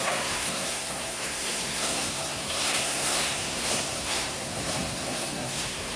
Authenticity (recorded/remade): remade